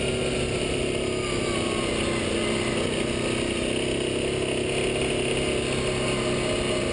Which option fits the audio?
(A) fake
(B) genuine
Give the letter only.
B